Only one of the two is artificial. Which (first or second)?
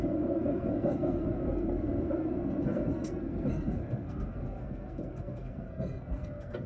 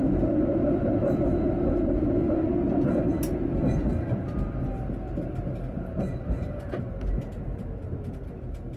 first